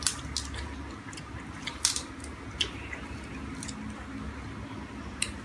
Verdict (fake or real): real